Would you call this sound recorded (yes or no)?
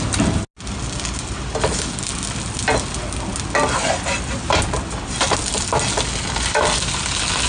yes